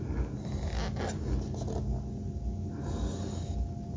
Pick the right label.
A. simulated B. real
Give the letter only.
B